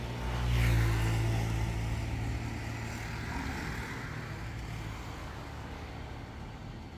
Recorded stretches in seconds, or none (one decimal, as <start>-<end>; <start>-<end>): 0.0-5.2; 5.9-7.0